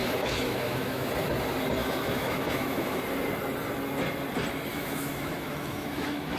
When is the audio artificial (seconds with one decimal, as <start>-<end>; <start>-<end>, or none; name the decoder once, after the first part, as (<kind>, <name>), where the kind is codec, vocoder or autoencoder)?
0.0-1.1 (autoencoder, DAC-VAE); 1.8-3.0; 4.7-6.4